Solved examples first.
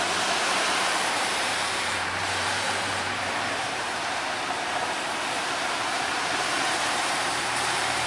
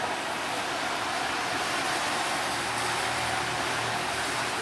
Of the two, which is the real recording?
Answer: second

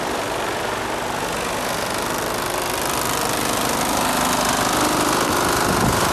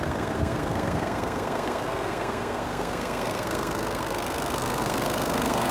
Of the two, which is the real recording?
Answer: first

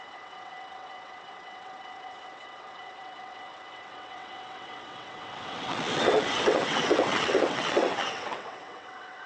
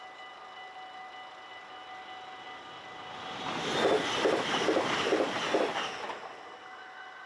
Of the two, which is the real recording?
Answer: second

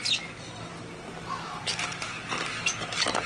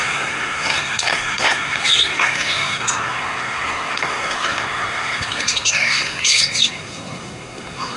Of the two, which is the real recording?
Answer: first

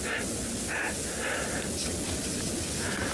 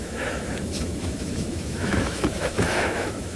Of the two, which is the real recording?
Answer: first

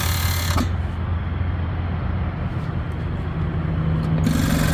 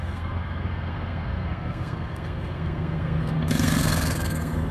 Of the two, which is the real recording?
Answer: first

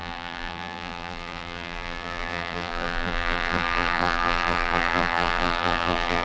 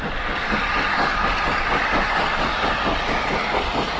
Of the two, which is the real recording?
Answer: second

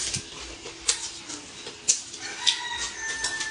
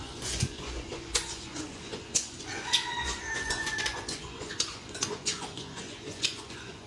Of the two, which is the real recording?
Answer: first